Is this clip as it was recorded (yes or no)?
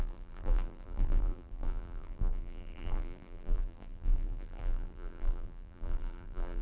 no